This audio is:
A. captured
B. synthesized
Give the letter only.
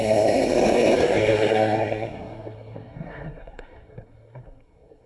B